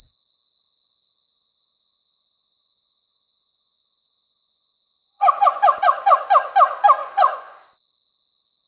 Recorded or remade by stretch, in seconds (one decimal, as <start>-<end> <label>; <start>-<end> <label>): 0.0-1.3 recorded; 1.3-6.2 remade; 6.2-7.0 recorded; 7.0-7.6 remade; 7.6-8.7 recorded